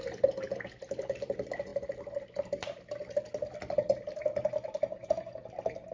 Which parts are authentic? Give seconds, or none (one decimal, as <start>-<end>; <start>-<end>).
0.0-5.9

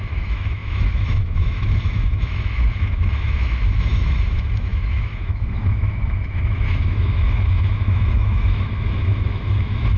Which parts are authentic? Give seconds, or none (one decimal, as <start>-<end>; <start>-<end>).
none

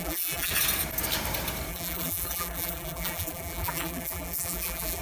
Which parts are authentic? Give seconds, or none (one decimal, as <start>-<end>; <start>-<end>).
0.5-1.7